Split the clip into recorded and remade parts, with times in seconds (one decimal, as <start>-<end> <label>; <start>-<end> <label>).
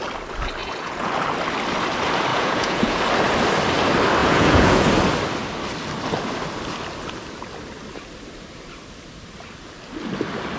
0.0-0.6 recorded; 0.6-1.1 remade; 1.1-2.3 recorded; 2.3-3.0 remade; 3.0-4.2 recorded; 4.2-4.9 remade; 4.9-10.6 recorded